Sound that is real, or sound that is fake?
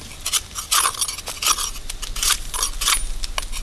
real